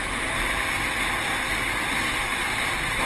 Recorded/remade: recorded